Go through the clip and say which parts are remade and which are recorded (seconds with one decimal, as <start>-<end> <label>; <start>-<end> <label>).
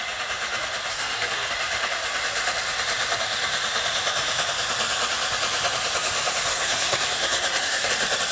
0.0-0.9 recorded; 0.9-1.5 remade; 1.5-6.5 recorded; 6.5-7.9 remade; 7.9-8.3 recorded